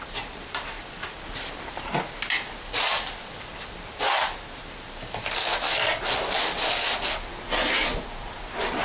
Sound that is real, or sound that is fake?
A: real